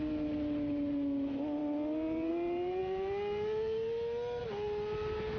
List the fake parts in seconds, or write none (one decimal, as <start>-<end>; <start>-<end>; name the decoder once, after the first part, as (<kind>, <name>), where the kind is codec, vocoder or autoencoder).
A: none